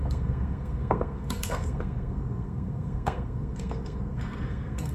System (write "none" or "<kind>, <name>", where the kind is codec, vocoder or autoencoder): codec, SNAC